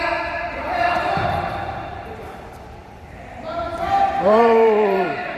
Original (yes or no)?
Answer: no